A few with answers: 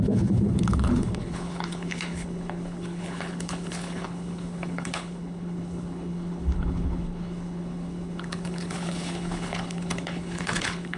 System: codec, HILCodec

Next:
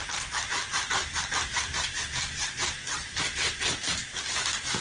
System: none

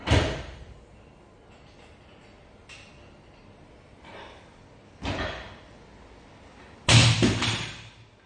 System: none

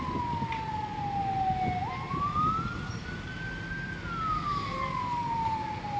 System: none